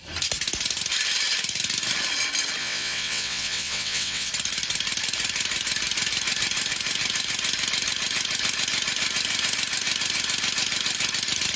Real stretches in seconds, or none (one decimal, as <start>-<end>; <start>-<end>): 0.0-2.6; 4.3-11.6